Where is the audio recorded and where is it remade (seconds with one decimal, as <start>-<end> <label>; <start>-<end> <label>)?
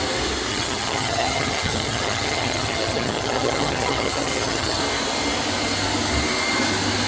0.0-0.5 recorded; 0.5-4.8 remade; 4.8-7.1 recorded